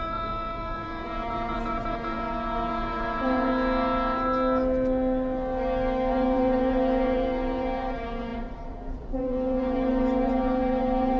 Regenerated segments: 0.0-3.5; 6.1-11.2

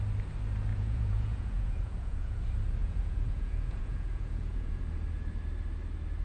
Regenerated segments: 0.7-2.4; 2.8-4.8

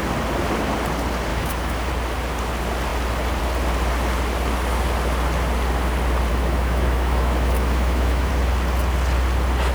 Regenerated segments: 1.3-1.9; 6.3-8.3

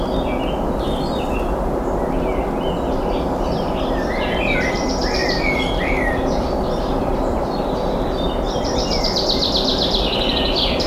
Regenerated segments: 0.0-0.4; 3.2-10.9

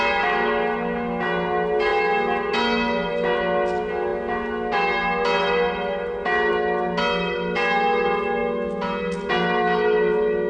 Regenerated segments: none

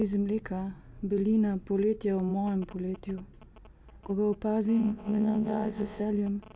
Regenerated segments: 4.8-6.0